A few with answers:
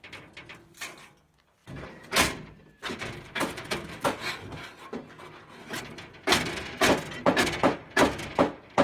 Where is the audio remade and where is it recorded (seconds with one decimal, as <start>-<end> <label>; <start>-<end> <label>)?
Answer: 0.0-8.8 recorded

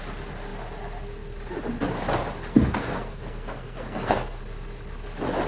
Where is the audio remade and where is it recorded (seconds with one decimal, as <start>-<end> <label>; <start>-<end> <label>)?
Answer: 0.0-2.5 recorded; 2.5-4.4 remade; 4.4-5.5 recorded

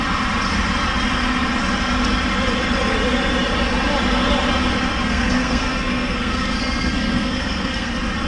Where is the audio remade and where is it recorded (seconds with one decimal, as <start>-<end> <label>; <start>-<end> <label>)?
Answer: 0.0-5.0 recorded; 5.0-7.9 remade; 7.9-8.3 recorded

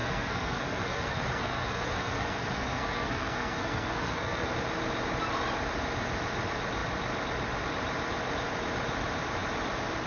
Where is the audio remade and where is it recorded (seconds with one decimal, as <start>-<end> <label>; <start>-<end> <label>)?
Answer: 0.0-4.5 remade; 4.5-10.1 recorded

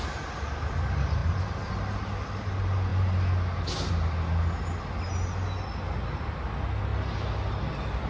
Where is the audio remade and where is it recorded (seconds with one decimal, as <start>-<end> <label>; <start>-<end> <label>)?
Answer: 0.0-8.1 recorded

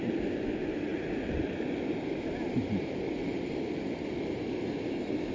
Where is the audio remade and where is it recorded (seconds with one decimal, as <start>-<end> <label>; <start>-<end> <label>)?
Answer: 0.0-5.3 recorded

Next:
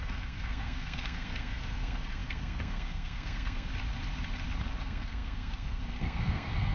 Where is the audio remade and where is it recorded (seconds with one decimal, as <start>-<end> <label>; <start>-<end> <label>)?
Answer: 0.0-3.7 remade; 3.7-4.8 recorded; 4.8-6.7 remade

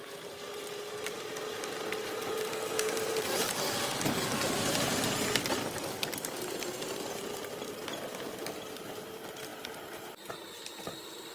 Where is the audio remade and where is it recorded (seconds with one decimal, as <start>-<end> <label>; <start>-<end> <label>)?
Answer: 0.0-11.3 recorded